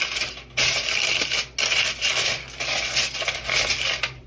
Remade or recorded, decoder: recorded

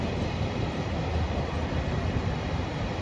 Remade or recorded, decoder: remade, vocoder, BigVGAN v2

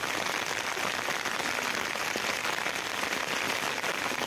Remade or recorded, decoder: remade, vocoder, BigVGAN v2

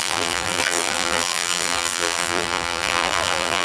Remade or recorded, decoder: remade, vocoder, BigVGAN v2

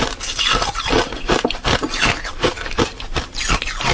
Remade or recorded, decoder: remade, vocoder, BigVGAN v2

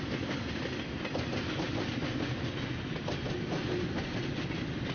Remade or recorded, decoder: recorded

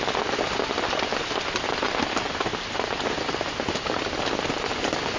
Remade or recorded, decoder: recorded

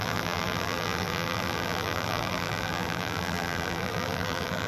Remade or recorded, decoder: remade, vocoder, BigVGAN v2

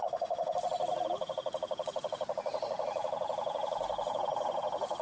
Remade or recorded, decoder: recorded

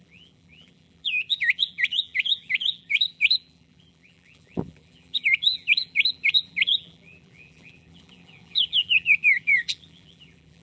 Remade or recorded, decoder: remade, vocoder, BigVGAN v2